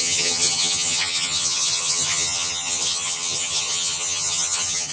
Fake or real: fake